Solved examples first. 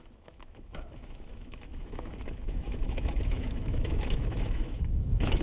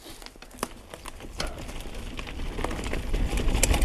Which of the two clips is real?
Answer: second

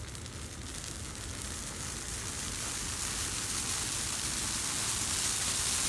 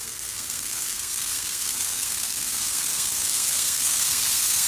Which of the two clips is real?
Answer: first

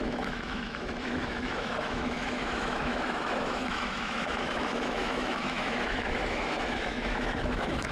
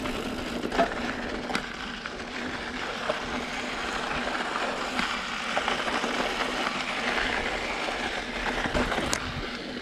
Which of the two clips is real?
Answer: second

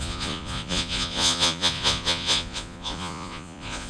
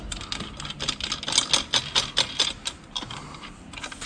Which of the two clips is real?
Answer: second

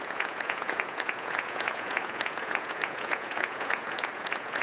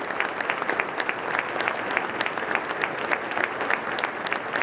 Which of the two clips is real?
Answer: second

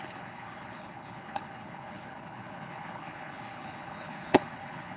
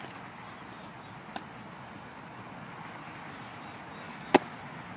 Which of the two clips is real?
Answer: second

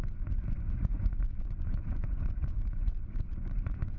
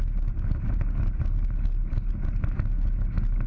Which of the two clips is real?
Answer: second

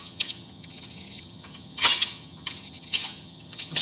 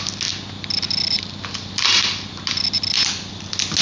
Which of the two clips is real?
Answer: second